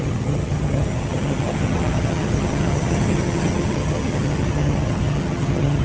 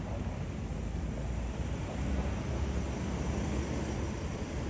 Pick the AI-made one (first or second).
first